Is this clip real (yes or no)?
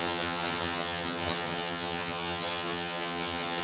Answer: no